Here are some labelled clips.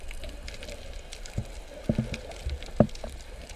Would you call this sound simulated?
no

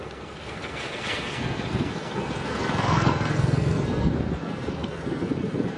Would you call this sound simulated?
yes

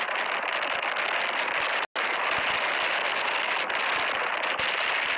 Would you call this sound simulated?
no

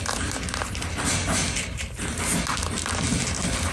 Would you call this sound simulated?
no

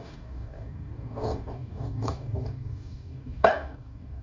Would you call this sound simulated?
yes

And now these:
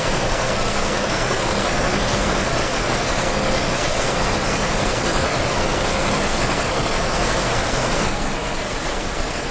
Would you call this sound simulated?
yes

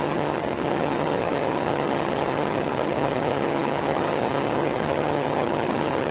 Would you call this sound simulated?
yes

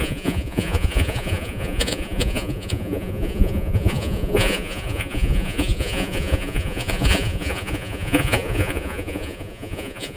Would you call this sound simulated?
yes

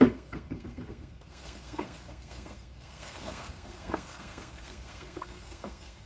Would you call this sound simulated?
yes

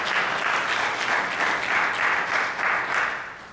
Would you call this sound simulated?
no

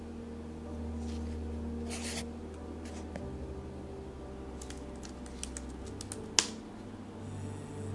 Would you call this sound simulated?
no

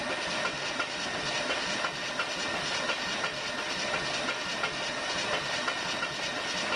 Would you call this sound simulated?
no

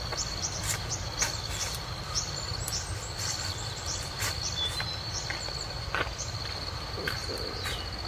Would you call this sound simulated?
no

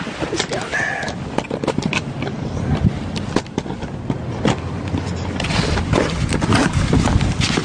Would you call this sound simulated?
no